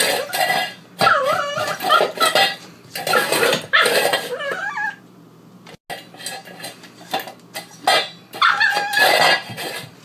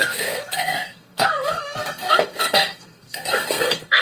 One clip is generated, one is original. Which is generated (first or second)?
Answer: second